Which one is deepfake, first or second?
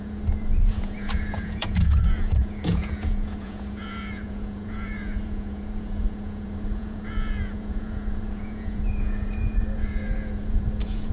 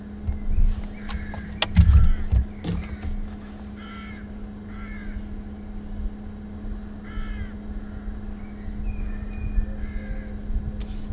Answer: first